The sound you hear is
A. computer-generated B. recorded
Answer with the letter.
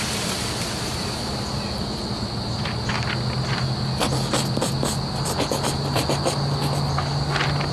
B